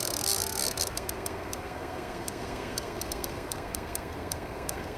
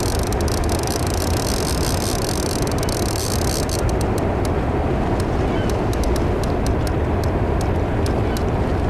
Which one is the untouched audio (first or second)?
second